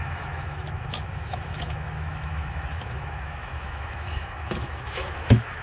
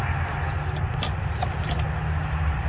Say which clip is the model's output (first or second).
first